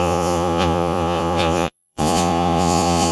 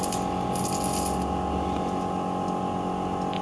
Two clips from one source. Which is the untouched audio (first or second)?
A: second